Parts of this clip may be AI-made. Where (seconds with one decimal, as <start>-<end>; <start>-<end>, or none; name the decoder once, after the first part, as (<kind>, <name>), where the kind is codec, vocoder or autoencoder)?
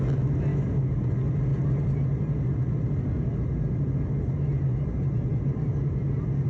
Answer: 0.5-1.0 (autoencoder, DAC-VAE)